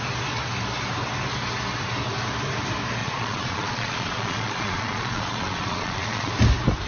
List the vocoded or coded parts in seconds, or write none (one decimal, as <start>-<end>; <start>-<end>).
3.0-6.3